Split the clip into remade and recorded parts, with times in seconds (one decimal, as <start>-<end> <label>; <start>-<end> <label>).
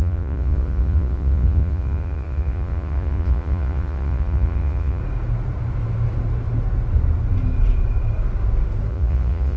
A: 0.0-5.0 remade; 5.0-8.9 recorded; 8.9-9.6 remade